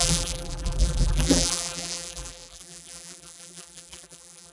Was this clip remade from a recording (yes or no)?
yes